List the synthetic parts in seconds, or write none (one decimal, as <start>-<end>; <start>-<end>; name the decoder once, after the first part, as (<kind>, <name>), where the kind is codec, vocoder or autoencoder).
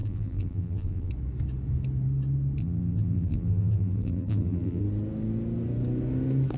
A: 0.0-1.1 (vocoder, BigVGAN v2); 2.6-4.8